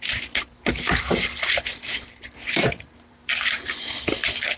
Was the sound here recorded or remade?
recorded